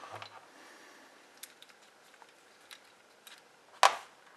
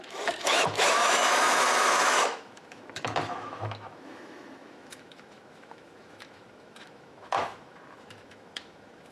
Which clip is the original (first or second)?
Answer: first